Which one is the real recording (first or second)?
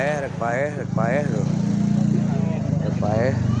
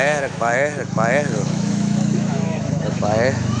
first